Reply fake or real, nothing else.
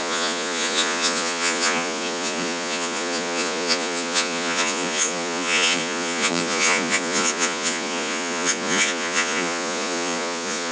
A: fake